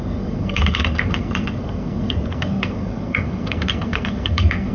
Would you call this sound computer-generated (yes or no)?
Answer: yes